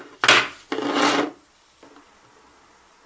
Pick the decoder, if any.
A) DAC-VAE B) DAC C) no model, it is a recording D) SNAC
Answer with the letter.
C